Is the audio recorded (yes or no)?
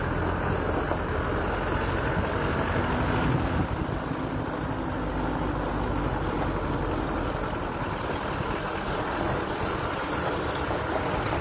yes